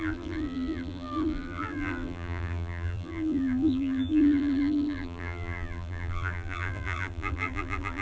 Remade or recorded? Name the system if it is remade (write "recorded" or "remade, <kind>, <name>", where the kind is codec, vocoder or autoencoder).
remade, vocoder, BigVGAN v2